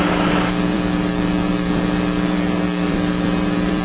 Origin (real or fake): fake